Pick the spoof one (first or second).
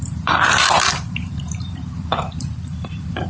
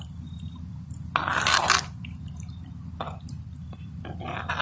first